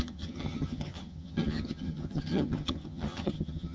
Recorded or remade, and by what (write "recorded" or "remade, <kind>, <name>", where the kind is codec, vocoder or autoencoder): remade, vocoder, HiFi-GAN